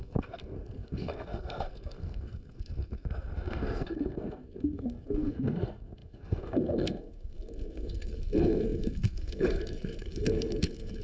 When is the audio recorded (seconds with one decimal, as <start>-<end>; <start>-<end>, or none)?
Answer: none